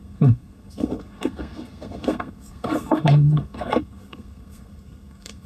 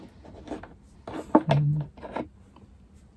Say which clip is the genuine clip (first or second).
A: second